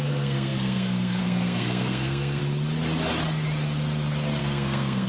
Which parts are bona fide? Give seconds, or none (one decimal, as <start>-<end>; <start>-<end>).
2.4-4.4